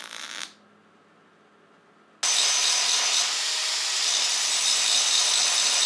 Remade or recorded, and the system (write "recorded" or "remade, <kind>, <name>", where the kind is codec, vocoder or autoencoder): recorded